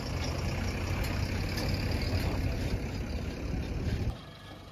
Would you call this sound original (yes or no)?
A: yes